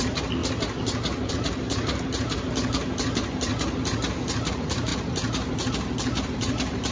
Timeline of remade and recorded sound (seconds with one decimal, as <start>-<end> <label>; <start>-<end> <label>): 0.0-0.4 remade; 0.4-1.3 recorded; 1.3-3.5 remade; 3.5-4.5 recorded; 4.5-4.9 remade; 4.9-5.7 recorded; 5.7-6.9 remade